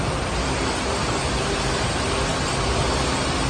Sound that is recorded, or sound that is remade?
recorded